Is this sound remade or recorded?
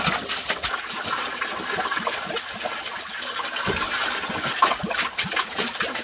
recorded